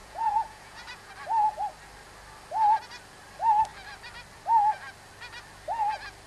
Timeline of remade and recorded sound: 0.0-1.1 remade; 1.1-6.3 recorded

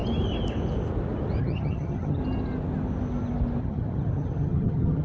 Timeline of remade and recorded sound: 0.0-1.4 recorded; 1.4-2.2 remade; 2.2-3.6 recorded; 3.6-5.0 remade

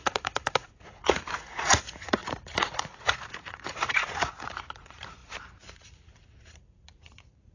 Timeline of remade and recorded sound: 0.0-5.2 remade; 5.2-5.8 recorded; 5.8-7.5 remade

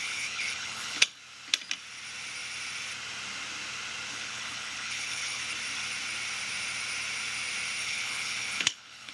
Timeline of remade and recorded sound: 0.0-1.2 remade; 1.2-4.1 recorded; 4.1-5.4 remade; 5.4-7.8 recorded; 7.8-9.1 remade

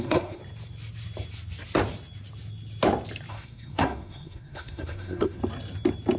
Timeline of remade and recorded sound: 0.0-0.4 remade; 0.4-3.3 recorded; 3.3-5.4 remade; 5.4-6.2 recorded

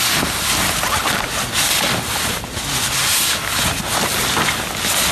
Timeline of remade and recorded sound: 0.0-5.1 recorded